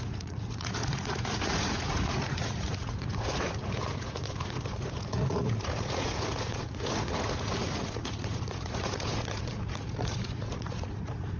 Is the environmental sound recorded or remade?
remade